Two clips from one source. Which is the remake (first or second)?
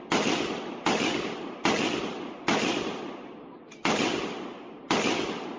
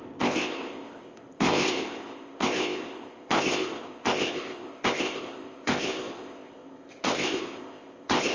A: second